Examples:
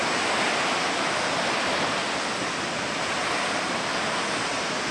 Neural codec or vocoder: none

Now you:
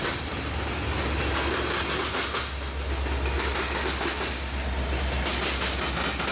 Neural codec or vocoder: none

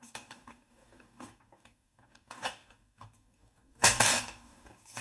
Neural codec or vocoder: codec, DAC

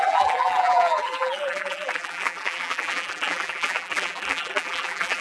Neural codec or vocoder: vocoder, BigVGAN v2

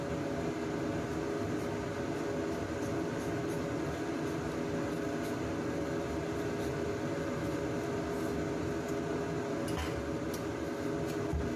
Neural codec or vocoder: none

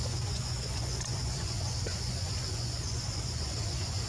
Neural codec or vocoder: vocoder, Vocos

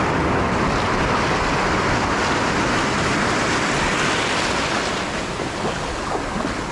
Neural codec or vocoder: none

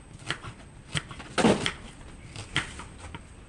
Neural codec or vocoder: none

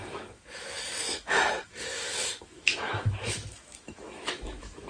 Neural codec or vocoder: autoencoder, DAC-VAE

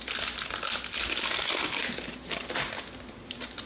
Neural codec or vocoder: none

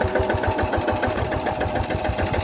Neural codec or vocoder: none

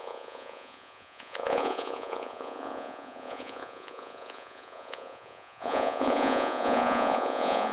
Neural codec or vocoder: vocoder, Vocos